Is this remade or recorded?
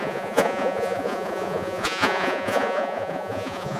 remade